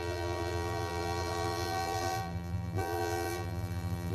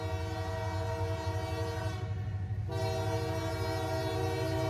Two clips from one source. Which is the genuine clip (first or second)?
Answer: second